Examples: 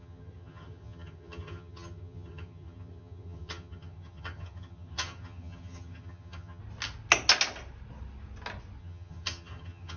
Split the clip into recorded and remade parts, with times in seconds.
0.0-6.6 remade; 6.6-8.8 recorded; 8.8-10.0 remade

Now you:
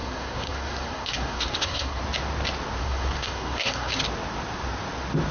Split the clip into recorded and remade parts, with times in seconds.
0.0-2.0 remade; 2.0-2.8 recorded; 2.8-3.9 remade; 3.9-5.3 recorded